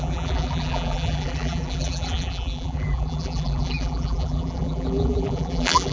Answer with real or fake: fake